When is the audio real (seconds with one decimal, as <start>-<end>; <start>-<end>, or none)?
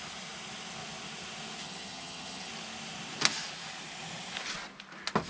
0.0-1.6; 2.5-5.3